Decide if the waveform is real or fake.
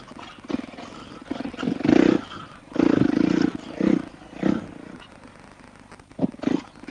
real